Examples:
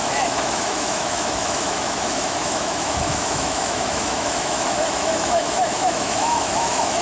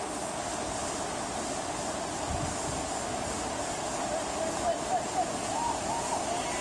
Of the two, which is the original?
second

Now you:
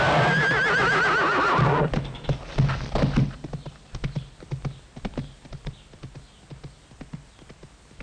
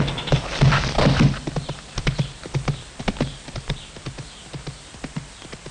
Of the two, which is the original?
first